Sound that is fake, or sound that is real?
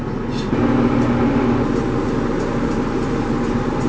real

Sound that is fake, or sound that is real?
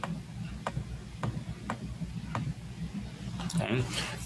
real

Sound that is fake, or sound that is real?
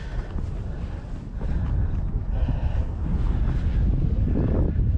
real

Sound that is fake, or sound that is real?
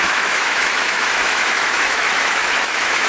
fake